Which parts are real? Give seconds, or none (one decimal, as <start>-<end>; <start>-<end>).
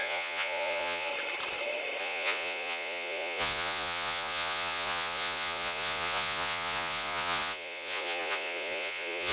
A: 1.1-2.0